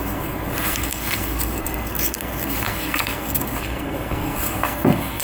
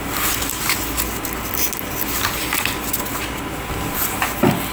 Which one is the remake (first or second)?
first